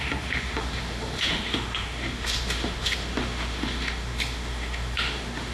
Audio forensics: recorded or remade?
remade